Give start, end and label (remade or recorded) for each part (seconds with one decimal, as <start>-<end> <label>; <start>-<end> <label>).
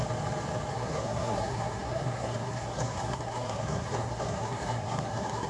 0.0-0.7 recorded; 0.7-5.5 remade